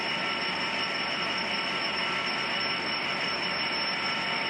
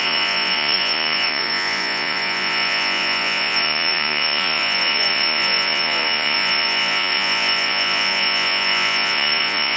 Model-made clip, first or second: second